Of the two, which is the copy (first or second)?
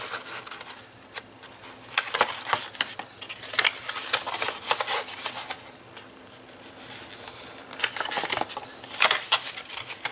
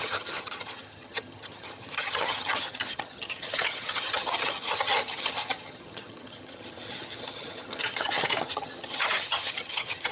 second